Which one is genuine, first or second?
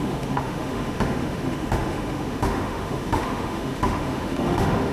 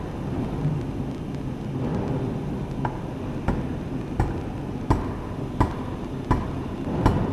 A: second